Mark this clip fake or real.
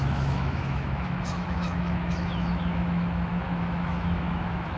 fake